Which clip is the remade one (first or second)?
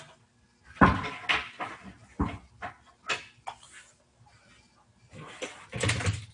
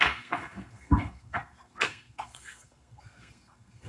second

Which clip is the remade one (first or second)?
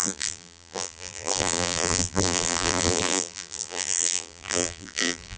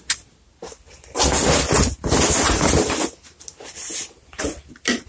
first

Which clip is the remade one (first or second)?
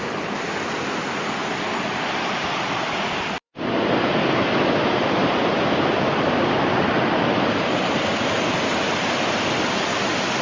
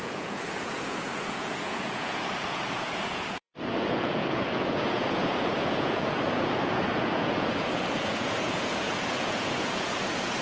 second